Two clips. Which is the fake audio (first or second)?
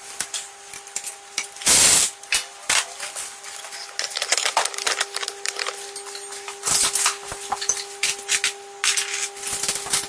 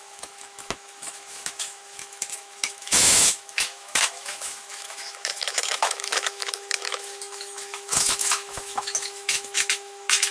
second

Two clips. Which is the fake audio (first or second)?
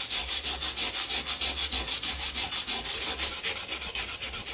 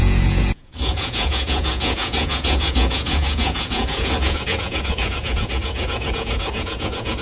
second